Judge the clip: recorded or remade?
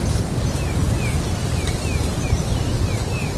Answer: recorded